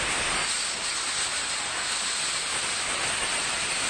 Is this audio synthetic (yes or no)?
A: no